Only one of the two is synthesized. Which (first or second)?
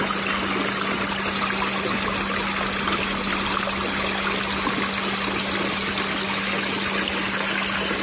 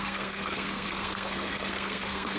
second